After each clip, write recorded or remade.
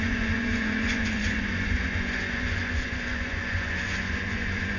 remade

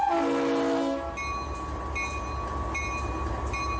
recorded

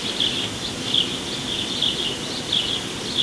recorded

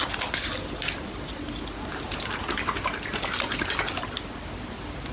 recorded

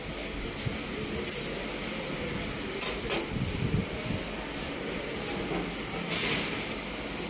recorded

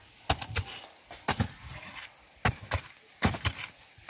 recorded